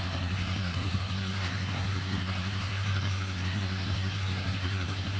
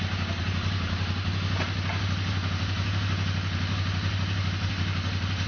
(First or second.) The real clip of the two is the second